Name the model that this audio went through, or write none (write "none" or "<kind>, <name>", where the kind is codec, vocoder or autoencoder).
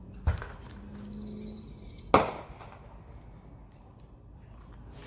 none